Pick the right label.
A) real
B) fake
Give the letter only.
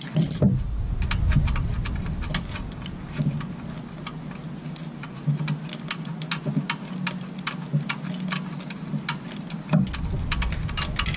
A